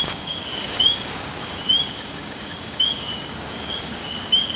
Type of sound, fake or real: fake